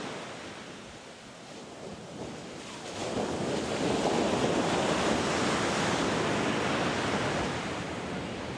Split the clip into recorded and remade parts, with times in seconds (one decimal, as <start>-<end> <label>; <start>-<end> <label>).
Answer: 0.0-3.0 recorded; 3.0-3.5 remade; 3.5-8.6 recorded

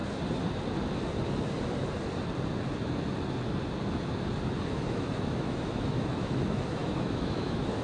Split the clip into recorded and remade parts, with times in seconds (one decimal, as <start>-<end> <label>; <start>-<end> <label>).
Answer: 0.0-4.7 recorded; 4.7-7.8 remade

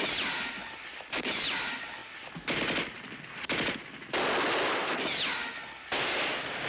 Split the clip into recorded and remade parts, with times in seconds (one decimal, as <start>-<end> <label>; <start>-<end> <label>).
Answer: 0.0-2.0 remade; 2.0-6.0 recorded; 6.0-6.7 remade